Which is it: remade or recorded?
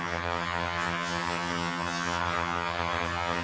remade